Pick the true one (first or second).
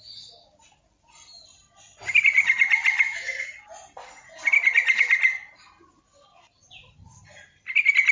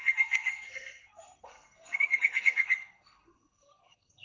first